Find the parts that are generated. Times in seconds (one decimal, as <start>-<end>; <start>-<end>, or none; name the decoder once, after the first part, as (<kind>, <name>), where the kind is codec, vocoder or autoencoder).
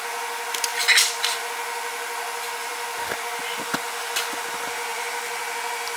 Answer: 0.7-1.5 (vocoder, BigVGAN v2); 2.6-3.2; 4.9-5.4